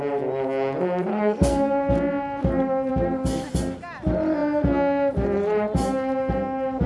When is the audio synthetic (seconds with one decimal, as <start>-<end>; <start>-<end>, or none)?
1.1-1.9